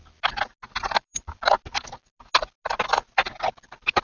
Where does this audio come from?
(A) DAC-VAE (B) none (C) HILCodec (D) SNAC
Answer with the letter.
B